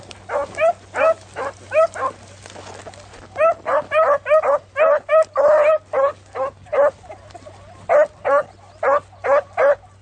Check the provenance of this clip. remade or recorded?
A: recorded